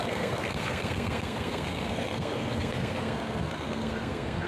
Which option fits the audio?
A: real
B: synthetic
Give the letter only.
B